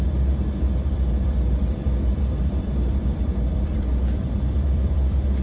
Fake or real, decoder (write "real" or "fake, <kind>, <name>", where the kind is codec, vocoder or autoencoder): fake, vocoder, BigVGAN v2